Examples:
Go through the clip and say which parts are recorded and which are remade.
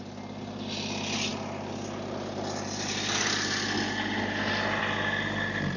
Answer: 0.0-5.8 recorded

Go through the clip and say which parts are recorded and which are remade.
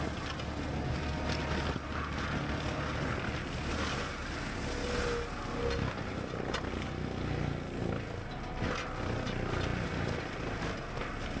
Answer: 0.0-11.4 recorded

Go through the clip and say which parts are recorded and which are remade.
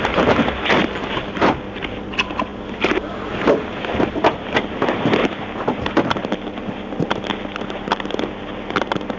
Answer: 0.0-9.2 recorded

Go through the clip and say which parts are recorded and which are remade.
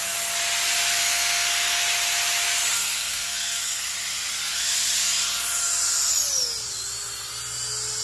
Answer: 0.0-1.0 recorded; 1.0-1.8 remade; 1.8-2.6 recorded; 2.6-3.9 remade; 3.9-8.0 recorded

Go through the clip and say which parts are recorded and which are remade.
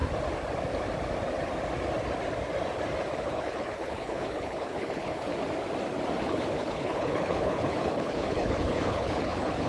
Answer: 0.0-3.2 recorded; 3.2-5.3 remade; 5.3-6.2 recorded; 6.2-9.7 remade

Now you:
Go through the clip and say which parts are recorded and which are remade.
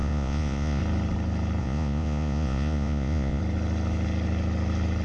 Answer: 0.0-0.8 remade; 0.8-1.6 recorded; 1.6-3.4 remade; 3.4-5.0 recorded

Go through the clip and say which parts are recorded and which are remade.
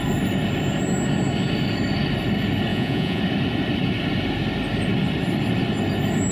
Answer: 0.0-2.7 recorded; 2.7-3.2 remade; 3.2-6.3 recorded